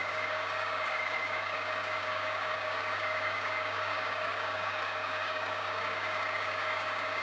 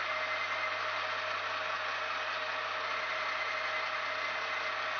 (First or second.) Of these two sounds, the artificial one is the first